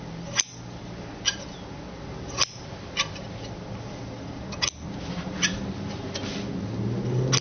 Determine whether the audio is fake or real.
real